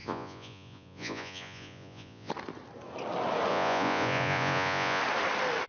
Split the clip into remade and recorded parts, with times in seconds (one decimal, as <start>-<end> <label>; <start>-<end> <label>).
0.0-2.3 remade; 2.3-3.5 recorded; 3.5-5.0 remade; 5.0-5.7 recorded

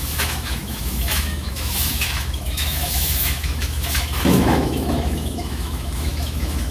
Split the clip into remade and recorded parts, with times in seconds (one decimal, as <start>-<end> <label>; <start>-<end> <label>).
0.0-6.7 remade

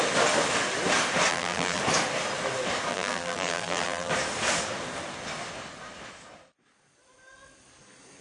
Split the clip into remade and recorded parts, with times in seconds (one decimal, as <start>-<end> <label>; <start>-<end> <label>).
0.0-1.3 recorded; 1.3-1.8 remade; 1.8-2.9 recorded; 2.9-4.1 remade; 4.1-8.2 recorded